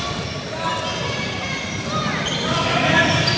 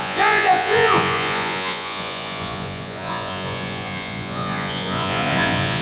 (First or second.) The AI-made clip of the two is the second